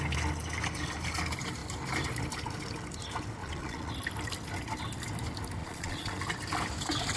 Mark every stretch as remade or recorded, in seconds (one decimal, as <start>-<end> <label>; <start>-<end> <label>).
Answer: 0.0-3.4 recorded; 3.4-3.9 remade; 3.9-5.6 recorded; 5.6-6.2 remade; 6.2-7.2 recorded